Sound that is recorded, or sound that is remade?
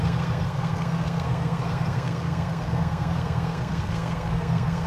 remade